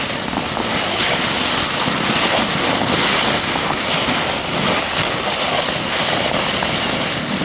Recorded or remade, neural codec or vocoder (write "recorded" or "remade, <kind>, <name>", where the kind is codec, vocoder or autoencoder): recorded